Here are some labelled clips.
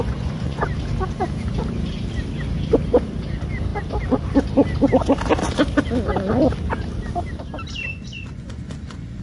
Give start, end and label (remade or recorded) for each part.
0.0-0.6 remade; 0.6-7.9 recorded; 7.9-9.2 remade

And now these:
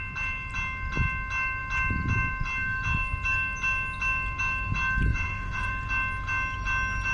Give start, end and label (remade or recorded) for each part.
0.0-5.1 recorded; 5.1-5.7 remade; 5.7-7.1 recorded

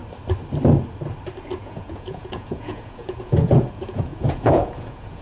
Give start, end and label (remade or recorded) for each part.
0.0-1.6 recorded; 1.6-5.2 remade

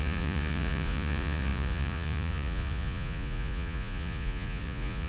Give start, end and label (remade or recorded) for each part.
0.0-5.1 remade